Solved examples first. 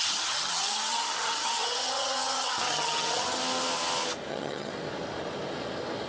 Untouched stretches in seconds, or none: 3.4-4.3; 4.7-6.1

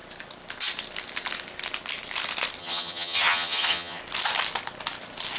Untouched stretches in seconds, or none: 0.0-2.6; 4.0-5.4

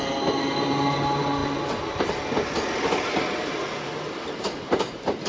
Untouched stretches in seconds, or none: 0.0-5.3

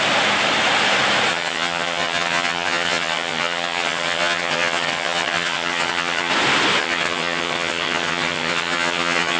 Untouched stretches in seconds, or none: 0.0-1.3; 6.3-6.8

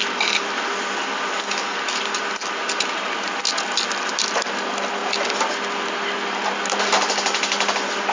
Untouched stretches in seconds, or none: 0.0-8.1

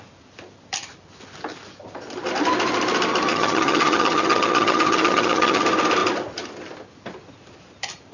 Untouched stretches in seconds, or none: 0.0-3.3; 5.6-8.1

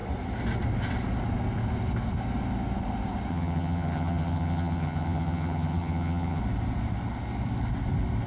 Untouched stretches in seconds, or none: 0.0-3.3; 6.4-8.3

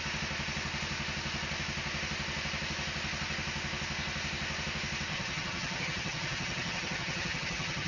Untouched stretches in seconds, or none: 0.0-5.1